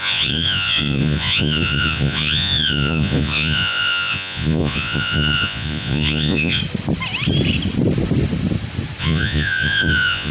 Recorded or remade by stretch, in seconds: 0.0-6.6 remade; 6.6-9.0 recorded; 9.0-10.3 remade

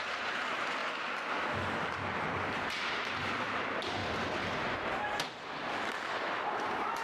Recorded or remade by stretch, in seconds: 0.0-0.8 remade; 0.8-1.9 recorded; 1.9-4.0 remade; 4.0-5.5 recorded; 5.5-7.0 remade